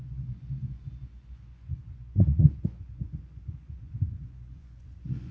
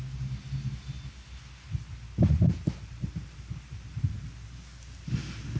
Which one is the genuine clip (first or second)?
second